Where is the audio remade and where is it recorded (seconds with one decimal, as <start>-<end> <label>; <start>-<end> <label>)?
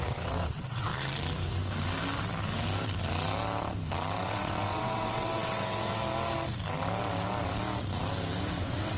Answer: 0.0-0.9 remade; 0.9-4.2 recorded; 4.2-6.0 remade; 6.0-8.5 recorded; 8.5-9.0 remade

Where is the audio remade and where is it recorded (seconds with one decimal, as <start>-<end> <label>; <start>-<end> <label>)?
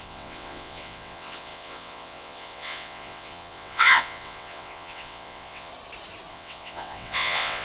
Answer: 0.0-5.7 remade; 5.7-6.3 recorded; 6.3-7.6 remade